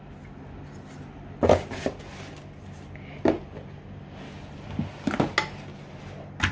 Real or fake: real